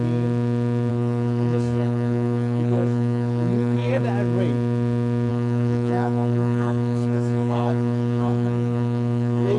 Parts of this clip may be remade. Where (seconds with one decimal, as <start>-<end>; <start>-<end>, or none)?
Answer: 0.9-4.0; 5.3-9.6